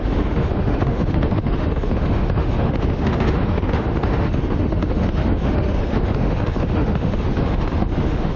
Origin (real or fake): fake